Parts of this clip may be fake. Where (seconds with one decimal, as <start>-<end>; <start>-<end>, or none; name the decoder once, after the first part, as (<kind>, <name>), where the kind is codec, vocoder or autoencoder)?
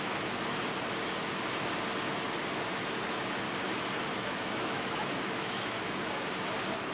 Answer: 4.1-6.1 (autoencoder, DAC-VAE)